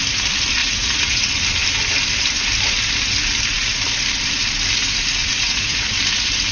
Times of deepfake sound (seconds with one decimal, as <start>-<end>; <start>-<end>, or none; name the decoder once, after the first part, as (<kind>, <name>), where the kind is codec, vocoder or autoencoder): 0.6-1.2 (vocoder, Vocos); 5.2-5.9